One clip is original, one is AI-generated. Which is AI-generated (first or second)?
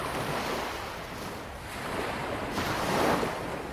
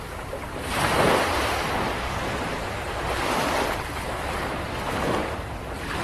second